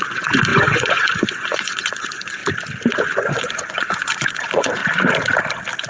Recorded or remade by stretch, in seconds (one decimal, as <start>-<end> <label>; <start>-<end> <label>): 0.0-2.4 remade; 2.4-3.0 recorded; 3.0-4.8 remade; 4.8-5.9 recorded